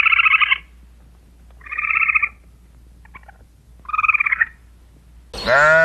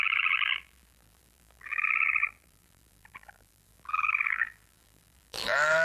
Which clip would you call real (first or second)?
first